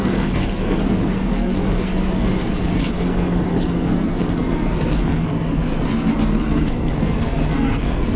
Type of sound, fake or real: fake